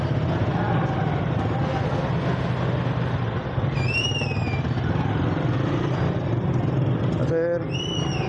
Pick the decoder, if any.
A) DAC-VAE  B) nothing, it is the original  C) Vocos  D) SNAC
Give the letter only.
B